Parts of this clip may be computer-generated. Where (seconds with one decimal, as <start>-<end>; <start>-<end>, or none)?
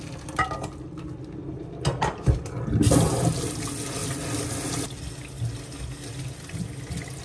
none